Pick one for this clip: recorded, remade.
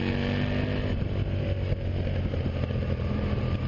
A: recorded